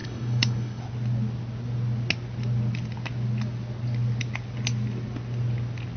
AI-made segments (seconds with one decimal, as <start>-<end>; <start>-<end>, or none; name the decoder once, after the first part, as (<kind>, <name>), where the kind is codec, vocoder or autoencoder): 0.0-0.8 (codec, DAC)